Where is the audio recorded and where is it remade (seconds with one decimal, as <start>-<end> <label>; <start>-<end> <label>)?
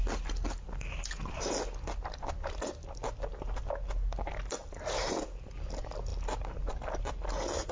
0.0-7.7 recorded